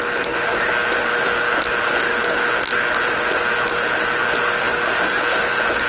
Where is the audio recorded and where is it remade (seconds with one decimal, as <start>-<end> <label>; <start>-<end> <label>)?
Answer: 0.0-5.9 recorded